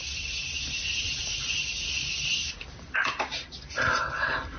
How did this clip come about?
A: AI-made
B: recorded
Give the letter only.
B